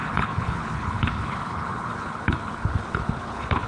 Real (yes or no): no